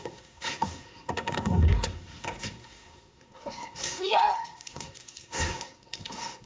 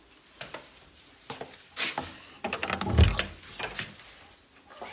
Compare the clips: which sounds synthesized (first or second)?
first